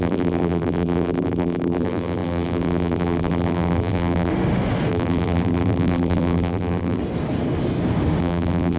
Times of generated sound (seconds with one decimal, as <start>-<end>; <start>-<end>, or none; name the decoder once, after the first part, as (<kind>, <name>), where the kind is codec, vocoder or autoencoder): 0.0-4.3 (vocoder, BigVGAN v2); 4.9-7.0; 8.2-8.8